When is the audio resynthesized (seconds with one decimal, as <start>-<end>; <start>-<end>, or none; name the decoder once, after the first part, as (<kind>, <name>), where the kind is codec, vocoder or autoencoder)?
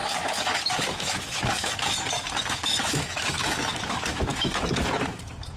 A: 0.0-5.6 (autoencoder, DAC-VAE)